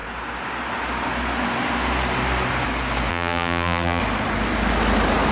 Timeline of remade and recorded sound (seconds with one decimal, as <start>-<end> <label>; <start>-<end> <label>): 0.0-3.1 recorded; 3.1-4.0 remade; 4.0-5.3 recorded

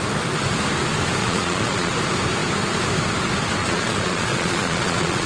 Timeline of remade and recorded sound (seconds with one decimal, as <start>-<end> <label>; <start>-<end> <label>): 0.0-1.2 recorded; 1.2-1.9 remade; 1.9-3.6 recorded; 3.6-5.3 remade

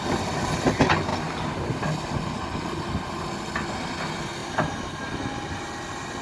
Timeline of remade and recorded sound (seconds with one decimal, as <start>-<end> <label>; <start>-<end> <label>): 0.0-4.4 recorded; 4.4-5.1 remade; 5.1-6.2 recorded

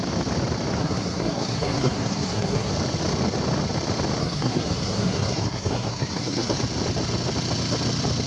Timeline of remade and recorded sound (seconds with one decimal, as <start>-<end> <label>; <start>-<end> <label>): 0.0-0.8 recorded; 0.8-2.7 remade; 2.7-4.2 recorded; 4.2-6.6 remade; 6.6-8.3 recorded

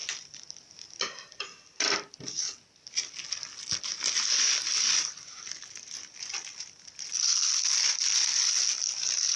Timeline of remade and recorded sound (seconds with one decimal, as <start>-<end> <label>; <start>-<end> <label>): 0.0-9.4 recorded